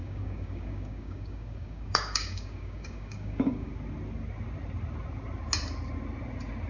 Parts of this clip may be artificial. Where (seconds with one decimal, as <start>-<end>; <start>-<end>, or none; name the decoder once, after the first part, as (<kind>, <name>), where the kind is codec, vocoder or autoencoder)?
0.0-3.7 (codec, DAC)